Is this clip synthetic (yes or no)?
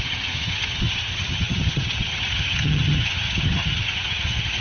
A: yes